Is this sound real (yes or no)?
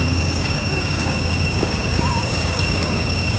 no